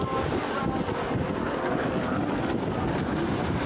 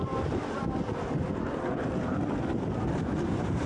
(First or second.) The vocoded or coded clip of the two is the second